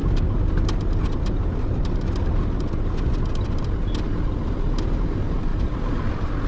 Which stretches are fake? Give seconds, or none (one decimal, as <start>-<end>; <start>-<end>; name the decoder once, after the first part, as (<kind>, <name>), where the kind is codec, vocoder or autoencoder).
none